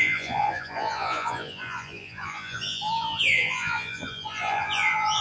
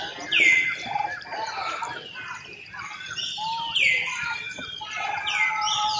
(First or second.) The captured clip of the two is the second